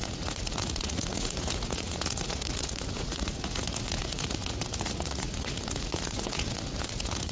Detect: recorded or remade remade